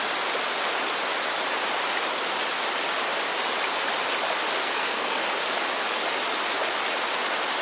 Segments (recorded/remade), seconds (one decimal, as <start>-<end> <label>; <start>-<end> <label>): 0.0-4.6 recorded; 4.6-5.3 remade; 5.3-7.6 recorded